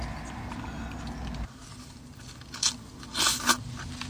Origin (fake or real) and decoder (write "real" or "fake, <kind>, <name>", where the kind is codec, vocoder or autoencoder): real